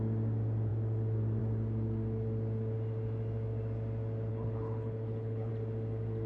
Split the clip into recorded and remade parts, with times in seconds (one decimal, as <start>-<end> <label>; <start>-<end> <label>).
0.0-4.3 recorded; 4.3-5.5 remade; 5.5-6.3 recorded